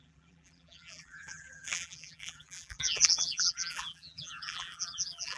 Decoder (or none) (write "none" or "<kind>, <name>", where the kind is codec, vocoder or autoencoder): vocoder, BigVGAN v2